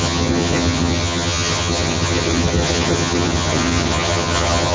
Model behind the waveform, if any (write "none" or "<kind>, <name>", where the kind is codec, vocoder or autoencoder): vocoder, HiFi-GAN